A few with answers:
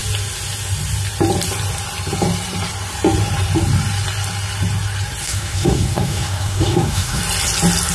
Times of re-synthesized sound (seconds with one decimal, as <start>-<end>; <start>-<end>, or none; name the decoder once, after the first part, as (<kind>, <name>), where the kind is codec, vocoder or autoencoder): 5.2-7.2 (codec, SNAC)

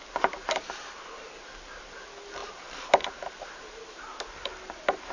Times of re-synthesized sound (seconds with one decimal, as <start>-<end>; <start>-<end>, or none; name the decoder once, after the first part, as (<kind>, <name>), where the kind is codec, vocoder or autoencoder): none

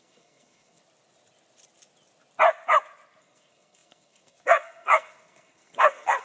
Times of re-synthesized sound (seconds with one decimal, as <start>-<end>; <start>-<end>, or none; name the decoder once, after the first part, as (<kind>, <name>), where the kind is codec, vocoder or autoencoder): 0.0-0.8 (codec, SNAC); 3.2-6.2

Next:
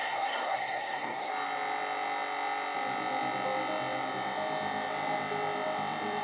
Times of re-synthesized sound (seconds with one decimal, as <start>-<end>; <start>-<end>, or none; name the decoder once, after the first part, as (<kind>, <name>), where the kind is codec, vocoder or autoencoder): 0.0-1.3 (codec, SNAC)

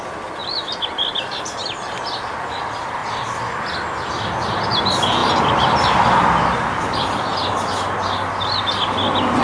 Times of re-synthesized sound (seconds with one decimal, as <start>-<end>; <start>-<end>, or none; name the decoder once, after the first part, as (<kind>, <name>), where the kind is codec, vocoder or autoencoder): none

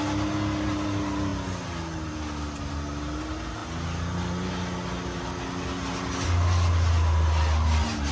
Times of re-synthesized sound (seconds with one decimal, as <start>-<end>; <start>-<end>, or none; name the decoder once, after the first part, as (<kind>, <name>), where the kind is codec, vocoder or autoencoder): none